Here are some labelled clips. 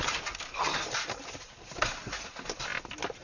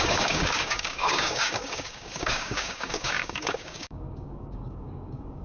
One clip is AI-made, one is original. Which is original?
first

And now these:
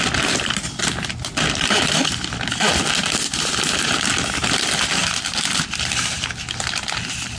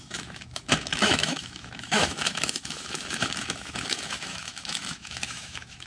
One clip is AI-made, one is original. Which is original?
first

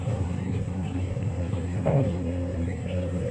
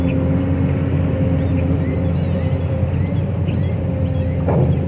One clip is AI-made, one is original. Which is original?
second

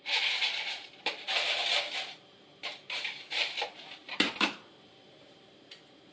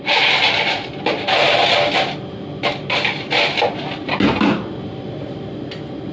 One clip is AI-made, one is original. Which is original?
second